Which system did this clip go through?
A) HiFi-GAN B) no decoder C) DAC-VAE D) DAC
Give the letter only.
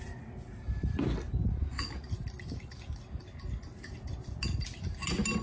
B